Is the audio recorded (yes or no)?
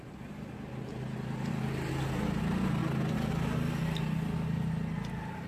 yes